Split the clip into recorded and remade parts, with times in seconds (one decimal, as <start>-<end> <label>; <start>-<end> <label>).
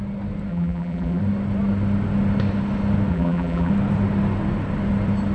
0.0-0.5 recorded; 0.5-1.2 remade; 1.2-3.1 recorded; 3.1-3.7 remade; 3.7-5.3 recorded